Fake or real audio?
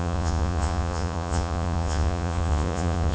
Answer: fake